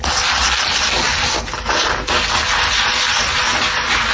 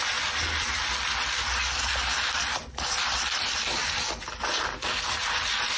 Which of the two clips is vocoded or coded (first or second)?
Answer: second